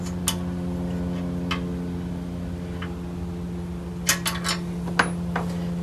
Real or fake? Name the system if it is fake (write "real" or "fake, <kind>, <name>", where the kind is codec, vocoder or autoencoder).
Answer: real